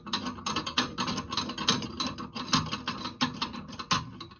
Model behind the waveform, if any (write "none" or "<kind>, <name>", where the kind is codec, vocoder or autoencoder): none